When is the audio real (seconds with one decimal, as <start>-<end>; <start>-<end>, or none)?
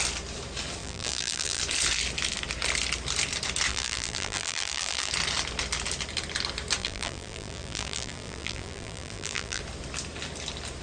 0.0-0.8; 1.6-3.7; 5.1-6.8; 9.6-10.8